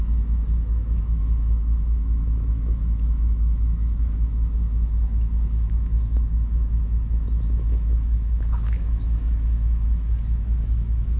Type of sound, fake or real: fake